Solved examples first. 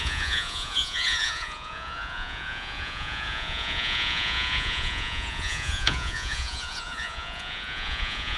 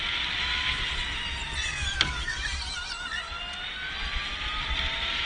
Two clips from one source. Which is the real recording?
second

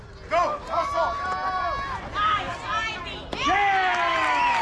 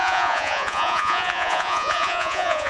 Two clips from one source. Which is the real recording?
first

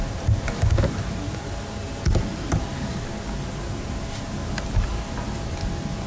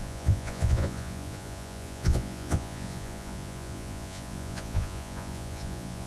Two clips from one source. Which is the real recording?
first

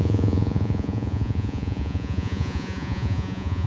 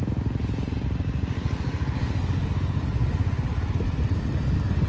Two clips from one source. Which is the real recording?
second